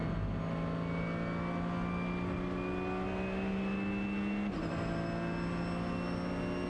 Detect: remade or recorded recorded